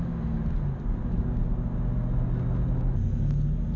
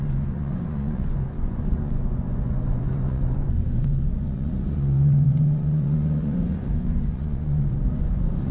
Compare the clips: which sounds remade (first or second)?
second